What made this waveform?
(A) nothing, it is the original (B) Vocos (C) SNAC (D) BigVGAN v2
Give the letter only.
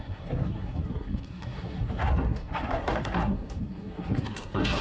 C